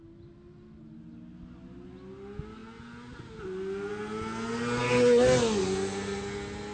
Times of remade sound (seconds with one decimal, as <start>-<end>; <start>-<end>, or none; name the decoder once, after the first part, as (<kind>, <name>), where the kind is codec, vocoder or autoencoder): none